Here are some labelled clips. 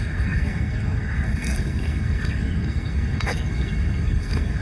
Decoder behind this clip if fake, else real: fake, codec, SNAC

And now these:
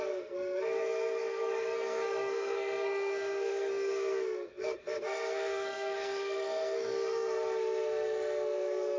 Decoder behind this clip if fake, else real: fake, codec, SNAC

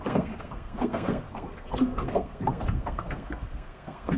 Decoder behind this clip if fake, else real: fake, codec, SNAC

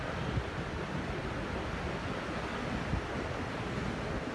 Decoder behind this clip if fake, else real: real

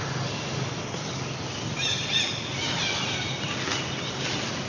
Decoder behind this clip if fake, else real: real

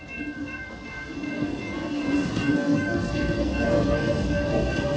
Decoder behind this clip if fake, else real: fake, codec, SNAC